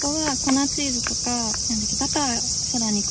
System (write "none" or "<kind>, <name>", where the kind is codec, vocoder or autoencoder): none